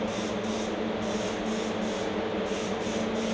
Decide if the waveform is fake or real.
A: real